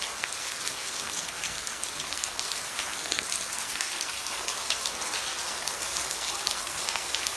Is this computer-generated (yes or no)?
yes